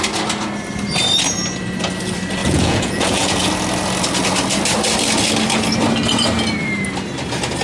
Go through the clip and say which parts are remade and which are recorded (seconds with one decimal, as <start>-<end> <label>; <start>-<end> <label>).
0.0-2.4 recorded; 2.4-3.5 remade; 3.5-7.6 recorded